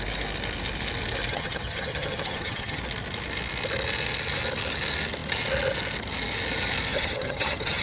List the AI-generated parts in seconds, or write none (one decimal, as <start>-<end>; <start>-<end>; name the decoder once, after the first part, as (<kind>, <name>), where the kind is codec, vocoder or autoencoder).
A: 1.3-2.8 (vocoder, HiFi-GAN); 6.9-7.8